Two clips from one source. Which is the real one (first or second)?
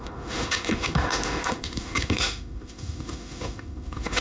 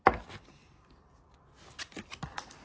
second